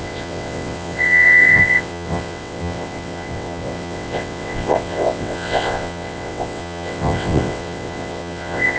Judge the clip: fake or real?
fake